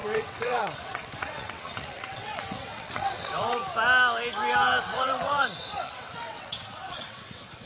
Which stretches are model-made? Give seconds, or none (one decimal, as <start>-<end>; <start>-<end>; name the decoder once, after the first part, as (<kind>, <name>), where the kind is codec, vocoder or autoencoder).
0.0-3.6 (vocoder, WaveNeXt); 4.8-7.7

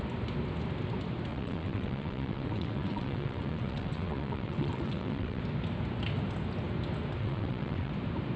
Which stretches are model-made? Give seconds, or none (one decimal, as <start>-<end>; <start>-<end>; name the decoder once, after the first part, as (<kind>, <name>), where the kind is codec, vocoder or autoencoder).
1.3-5.4 (vocoder, WaveNeXt); 7.2-7.9

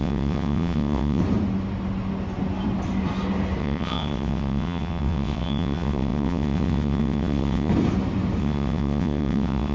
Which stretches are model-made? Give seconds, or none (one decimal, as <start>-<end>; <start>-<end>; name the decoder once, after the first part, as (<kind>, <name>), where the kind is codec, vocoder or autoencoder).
0.0-1.2 (vocoder, WaveNeXt); 3.6-7.7; 8.4-9.7

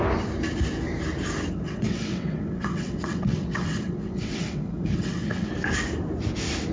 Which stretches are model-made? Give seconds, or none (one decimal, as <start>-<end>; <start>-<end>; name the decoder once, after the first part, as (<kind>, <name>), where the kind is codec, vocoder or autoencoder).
1.5-5.5 (vocoder, WaveNeXt)

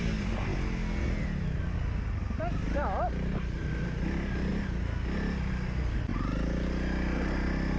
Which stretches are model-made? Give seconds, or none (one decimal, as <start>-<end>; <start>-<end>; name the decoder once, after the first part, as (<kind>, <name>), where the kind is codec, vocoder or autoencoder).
none

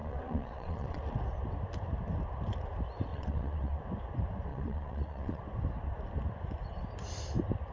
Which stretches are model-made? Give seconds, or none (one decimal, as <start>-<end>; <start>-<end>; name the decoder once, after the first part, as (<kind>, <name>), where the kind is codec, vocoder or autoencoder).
0.0-1.0 (vocoder, WaveNeXt); 3.1-3.8; 4.5-5.4

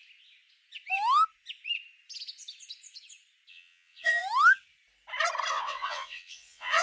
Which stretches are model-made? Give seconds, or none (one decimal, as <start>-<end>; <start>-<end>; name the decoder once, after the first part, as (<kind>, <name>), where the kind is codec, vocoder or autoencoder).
3.5-4.2 (vocoder, WaveNeXt); 5.5-6.8

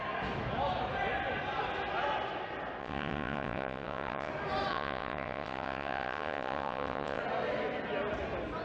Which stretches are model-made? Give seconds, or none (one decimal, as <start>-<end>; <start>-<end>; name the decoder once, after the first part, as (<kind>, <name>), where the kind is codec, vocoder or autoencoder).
2.8-4.3 (vocoder, WaveNeXt); 4.7-7.2